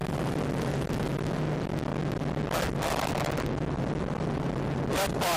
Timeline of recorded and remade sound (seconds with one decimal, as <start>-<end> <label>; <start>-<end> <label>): 0.0-5.4 recorded